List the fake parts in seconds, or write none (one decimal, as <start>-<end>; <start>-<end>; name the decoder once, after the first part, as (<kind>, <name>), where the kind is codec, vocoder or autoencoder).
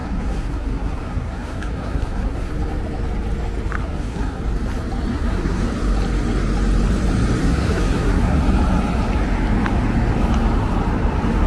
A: 0.0-2.5 (codec, SNAC); 3.8-4.4; 5.1-5.7; 7.4-8.4